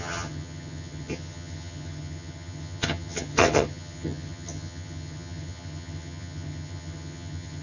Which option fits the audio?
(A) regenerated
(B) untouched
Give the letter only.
A